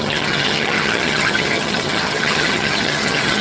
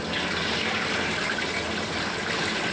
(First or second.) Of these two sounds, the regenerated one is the first